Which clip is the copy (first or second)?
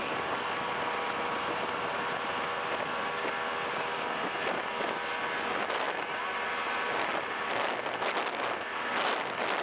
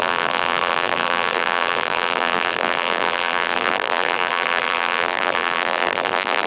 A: second